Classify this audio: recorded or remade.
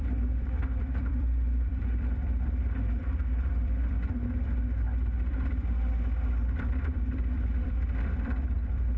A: remade